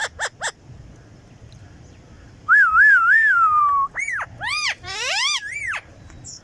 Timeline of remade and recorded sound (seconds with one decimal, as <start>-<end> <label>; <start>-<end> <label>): 0.0-1.5 recorded; 1.5-3.6 remade; 3.6-4.5 recorded; 4.5-6.4 remade